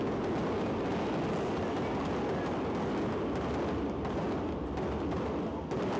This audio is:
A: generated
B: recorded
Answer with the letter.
B